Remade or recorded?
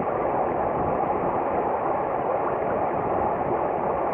recorded